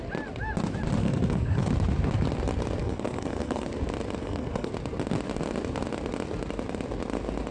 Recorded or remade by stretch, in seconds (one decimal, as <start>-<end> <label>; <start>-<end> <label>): 0.0-1.0 recorded; 1.0-1.7 remade; 1.7-2.8 recorded; 2.8-3.7 remade; 3.7-4.2 recorded; 4.2-4.7 remade; 4.7-7.5 recorded